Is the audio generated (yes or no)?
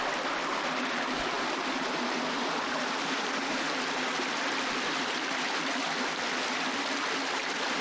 no